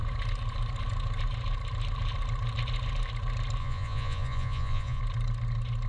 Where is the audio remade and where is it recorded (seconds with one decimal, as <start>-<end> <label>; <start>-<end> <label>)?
0.0-3.6 recorded; 3.6-5.0 remade; 5.0-5.9 recorded